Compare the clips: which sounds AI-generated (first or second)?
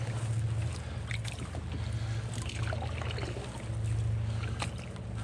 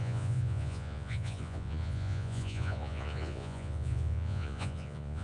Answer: second